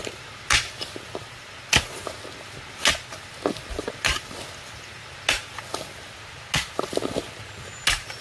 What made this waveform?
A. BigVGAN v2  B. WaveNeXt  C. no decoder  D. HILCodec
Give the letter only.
C